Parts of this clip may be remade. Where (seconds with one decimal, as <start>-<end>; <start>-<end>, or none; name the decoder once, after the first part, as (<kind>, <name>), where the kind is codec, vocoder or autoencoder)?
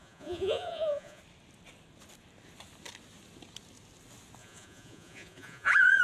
0.0-1.2 (vocoder, Vocos); 4.4-6.0